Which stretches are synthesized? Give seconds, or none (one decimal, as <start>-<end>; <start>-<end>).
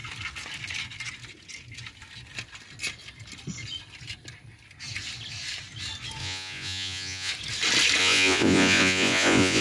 6.2-7.3; 8.0-9.6